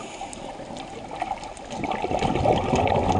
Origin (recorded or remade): recorded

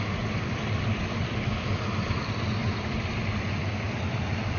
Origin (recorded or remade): recorded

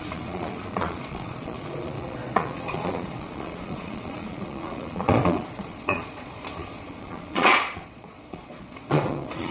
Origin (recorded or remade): remade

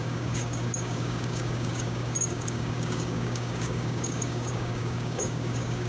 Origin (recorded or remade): remade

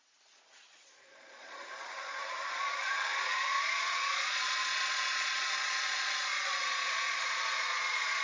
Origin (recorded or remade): remade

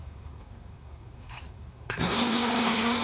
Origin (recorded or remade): remade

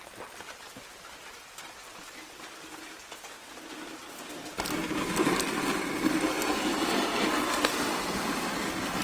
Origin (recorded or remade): recorded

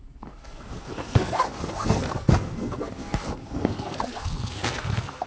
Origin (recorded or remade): remade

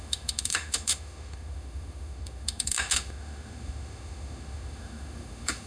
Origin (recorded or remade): remade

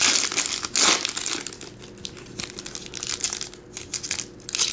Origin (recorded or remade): recorded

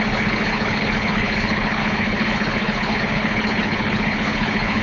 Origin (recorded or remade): remade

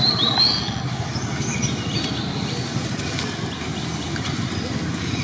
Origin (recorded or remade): recorded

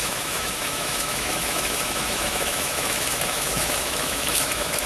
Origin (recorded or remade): remade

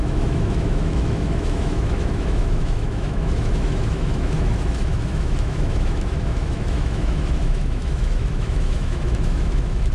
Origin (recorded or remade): remade